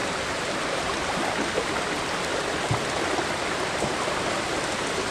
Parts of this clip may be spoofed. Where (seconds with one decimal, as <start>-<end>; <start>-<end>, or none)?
0.6-2.3; 3.7-5.1